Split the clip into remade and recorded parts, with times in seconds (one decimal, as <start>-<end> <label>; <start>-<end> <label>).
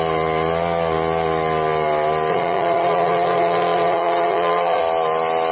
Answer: 0.0-2.3 recorded; 2.3-4.8 remade; 4.8-5.5 recorded